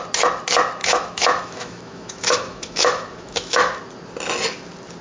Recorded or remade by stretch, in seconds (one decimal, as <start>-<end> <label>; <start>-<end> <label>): 0.0-0.8 recorded; 0.8-3.8 remade; 3.8-5.0 recorded